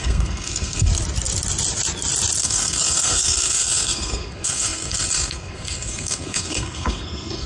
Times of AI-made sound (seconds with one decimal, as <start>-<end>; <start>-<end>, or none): 0.0-0.9; 2.4-7.5